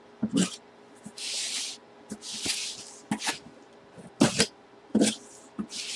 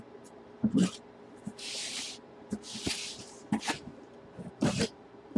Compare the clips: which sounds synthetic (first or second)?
second